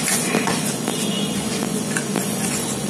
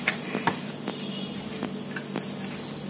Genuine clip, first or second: second